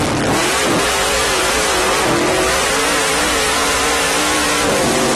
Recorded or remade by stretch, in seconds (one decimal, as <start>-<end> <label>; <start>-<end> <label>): 0.0-5.2 recorded